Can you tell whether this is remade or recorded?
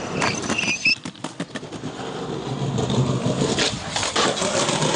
recorded